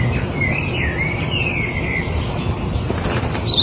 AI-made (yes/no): no